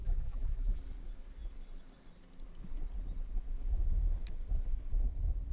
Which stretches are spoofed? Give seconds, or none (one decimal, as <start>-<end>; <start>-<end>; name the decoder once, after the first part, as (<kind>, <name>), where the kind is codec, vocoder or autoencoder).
0.0-0.8 (vocoder, BigVGAN v2)